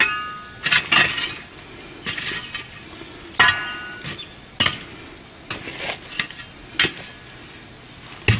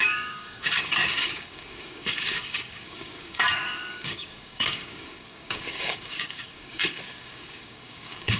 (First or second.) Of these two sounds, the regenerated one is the second